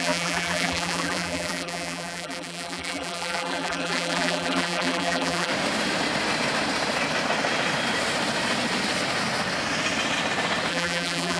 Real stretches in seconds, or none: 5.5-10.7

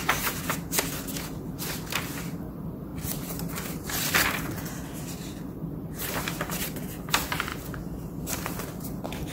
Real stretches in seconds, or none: 0.0-9.3

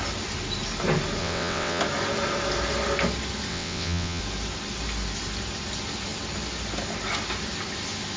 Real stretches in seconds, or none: 0.0-1.2; 1.8-3.5; 4.2-8.2